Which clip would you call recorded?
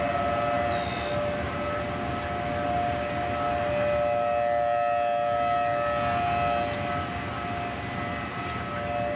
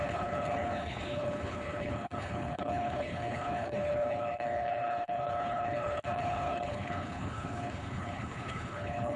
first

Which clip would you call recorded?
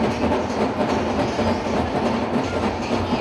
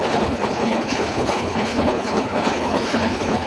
first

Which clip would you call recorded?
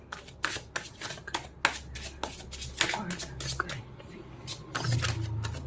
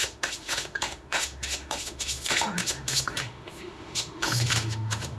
first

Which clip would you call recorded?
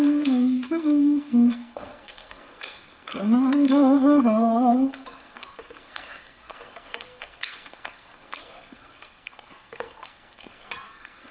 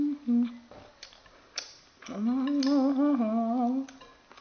second